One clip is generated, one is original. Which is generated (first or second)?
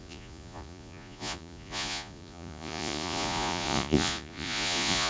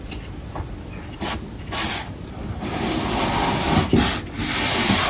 first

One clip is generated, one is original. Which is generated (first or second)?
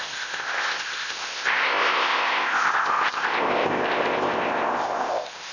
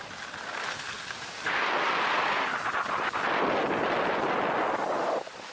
first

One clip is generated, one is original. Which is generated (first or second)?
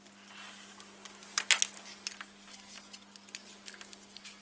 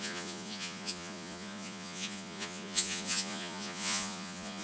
second